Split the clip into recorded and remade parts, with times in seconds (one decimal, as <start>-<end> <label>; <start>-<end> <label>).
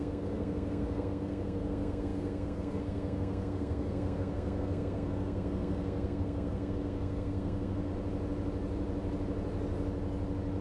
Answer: 0.0-7.9 remade; 7.9-10.6 recorded